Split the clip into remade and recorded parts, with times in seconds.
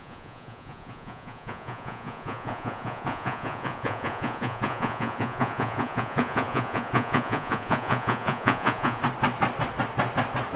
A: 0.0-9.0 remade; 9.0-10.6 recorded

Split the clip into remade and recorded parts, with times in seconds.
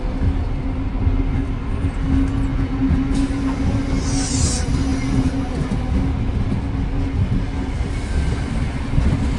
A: 0.0-2.5 recorded; 2.5-3.0 remade; 3.0-9.4 recorded